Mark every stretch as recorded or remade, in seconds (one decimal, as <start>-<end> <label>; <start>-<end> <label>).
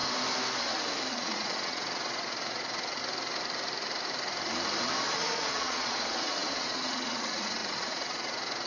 0.0-1.1 recorded; 1.1-3.0 remade; 3.0-5.1 recorded; 5.1-8.7 remade